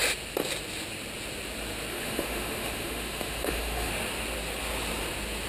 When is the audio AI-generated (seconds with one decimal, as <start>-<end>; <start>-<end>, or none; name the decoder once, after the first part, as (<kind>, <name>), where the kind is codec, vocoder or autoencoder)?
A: 1.9-3.9 (autoencoder, DAC-VAE)

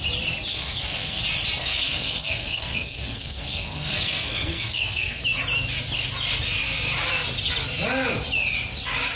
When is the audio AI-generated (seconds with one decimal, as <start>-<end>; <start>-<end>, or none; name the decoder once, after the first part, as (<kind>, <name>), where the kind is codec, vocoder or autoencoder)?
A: 0.5-1.2 (codec, SNAC); 1.6-5.2